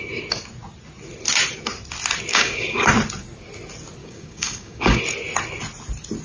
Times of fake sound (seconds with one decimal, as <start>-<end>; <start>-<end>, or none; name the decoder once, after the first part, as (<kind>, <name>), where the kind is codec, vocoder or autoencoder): 2.3-2.9 (codec, DAC); 4.0-5.0